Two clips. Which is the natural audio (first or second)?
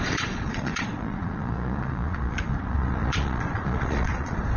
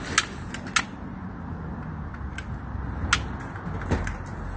second